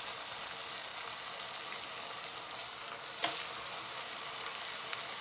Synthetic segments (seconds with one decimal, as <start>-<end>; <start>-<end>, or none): none